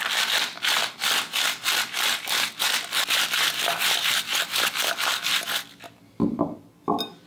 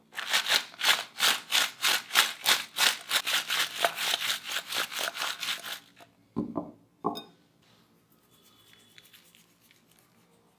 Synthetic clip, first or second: first